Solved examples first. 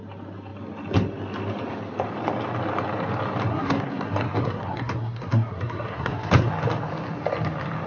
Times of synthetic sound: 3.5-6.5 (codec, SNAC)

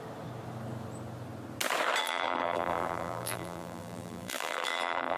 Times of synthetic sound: 2.0-5.2 (vocoder, BigVGAN v2)